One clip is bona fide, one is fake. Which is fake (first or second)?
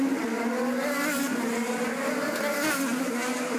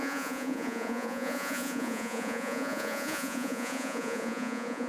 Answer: second